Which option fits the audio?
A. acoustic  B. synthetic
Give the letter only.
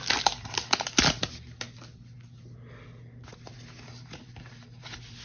A